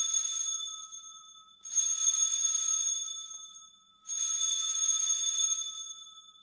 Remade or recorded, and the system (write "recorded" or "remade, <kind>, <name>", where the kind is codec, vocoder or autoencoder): remade, vocoder, BigVGAN v2